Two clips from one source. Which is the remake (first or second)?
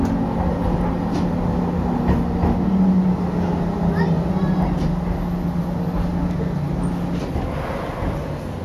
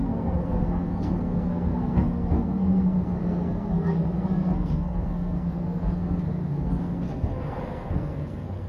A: second